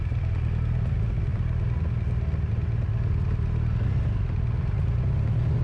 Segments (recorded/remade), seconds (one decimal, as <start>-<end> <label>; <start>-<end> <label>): 0.0-5.6 recorded